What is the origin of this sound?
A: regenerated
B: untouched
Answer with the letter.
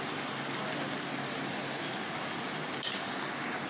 B